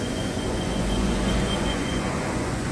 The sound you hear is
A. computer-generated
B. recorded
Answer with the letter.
A